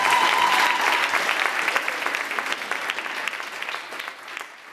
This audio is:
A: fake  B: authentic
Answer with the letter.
B